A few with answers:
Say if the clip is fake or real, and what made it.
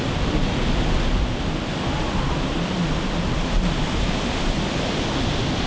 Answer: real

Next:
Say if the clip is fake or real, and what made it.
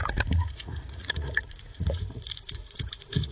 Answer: fake, vocoder, Vocos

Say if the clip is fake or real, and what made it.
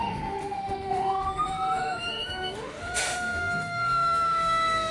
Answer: fake, autoencoder, DAC-VAE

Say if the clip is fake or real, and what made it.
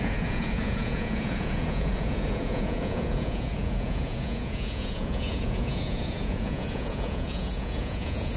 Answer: fake, vocoder, Vocos